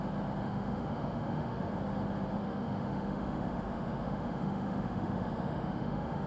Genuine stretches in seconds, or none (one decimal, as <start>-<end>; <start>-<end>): 0.0-0.4; 1.7-2.4